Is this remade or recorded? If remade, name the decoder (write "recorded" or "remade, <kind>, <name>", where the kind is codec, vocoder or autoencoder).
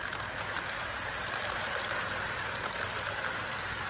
recorded